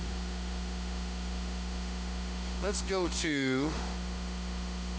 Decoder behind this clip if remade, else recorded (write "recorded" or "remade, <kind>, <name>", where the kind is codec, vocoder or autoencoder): remade, autoencoder, DAC-VAE